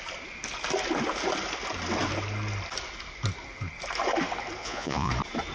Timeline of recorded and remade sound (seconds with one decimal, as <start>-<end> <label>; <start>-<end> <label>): 0.0-4.6 recorded; 4.6-5.1 remade; 5.1-5.5 recorded